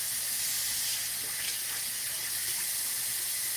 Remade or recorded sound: recorded